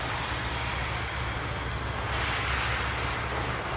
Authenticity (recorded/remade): recorded